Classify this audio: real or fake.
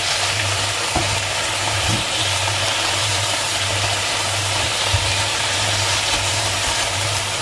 fake